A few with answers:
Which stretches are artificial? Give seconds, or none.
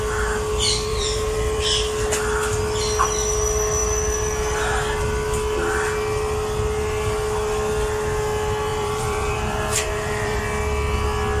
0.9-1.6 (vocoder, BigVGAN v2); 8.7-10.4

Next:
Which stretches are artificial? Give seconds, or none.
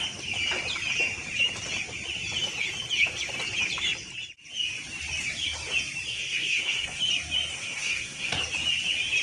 6.1-7.0 (codec, SNAC); 7.5-8.4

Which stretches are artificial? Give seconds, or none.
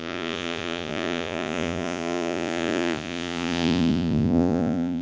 0.0-5.0 (vocoder, Vocos)